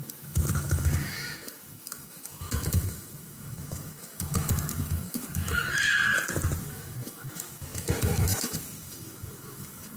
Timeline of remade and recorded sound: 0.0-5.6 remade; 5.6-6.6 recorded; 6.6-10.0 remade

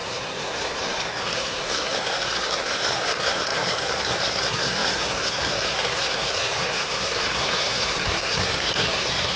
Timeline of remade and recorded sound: 0.0-9.4 remade